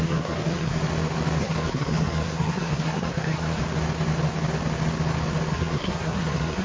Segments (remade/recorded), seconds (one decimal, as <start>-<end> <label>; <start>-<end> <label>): 0.0-0.8 remade; 0.8-1.4 recorded; 1.4-3.6 remade; 3.6-5.5 recorded; 5.5-6.6 remade